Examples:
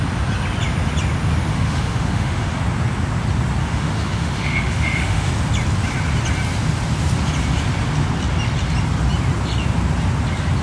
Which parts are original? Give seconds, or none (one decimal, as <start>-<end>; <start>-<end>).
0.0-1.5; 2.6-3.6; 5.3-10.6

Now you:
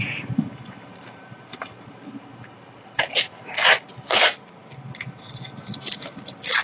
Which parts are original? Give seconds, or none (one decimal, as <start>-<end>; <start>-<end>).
0.0-0.9; 3.1-6.6

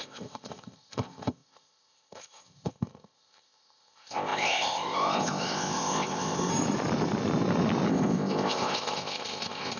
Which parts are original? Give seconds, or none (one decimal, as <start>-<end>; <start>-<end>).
6.5-7.9